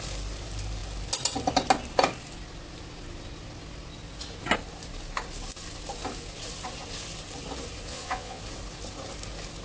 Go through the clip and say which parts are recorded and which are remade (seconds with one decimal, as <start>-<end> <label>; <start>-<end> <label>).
0.0-7.9 recorded; 7.9-8.4 remade; 8.4-9.6 recorded